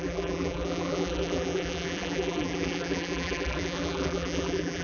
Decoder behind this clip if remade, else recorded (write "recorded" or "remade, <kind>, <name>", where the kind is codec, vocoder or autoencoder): remade, vocoder, BigVGAN v2